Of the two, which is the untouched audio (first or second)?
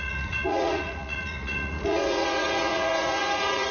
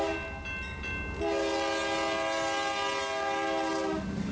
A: second